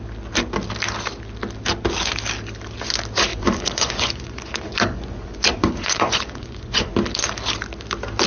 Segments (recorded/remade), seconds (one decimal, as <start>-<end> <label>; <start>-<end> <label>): 0.0-3.3 recorded; 3.3-6.9 remade; 6.9-8.3 recorded